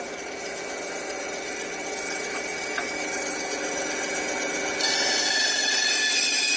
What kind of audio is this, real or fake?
real